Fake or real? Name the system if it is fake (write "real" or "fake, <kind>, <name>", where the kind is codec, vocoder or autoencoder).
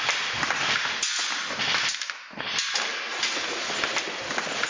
real